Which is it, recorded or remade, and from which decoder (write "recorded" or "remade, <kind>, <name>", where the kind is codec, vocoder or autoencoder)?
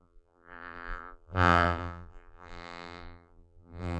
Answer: remade, vocoder, BigVGAN v2